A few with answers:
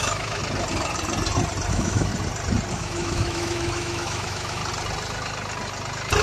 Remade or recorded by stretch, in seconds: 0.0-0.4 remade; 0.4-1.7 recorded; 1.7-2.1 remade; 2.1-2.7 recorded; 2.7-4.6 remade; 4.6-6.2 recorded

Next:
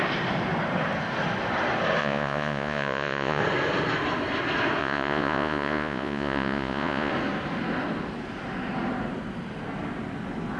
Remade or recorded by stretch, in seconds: 0.0-2.0 recorded; 2.0-3.4 remade; 3.4-4.8 recorded; 4.8-7.1 remade; 7.1-10.6 recorded

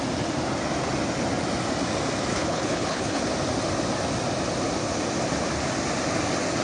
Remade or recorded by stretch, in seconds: 0.0-2.3 recorded; 2.3-3.2 remade; 3.2-6.6 recorded

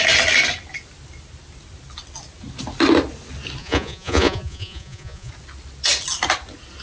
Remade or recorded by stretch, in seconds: 0.0-3.6 recorded; 3.6-5.3 remade; 5.3-6.8 recorded

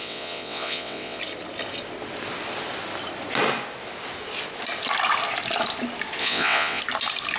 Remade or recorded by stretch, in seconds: 0.0-1.2 remade; 1.2-6.2 recorded; 6.2-6.8 remade; 6.8-7.4 recorded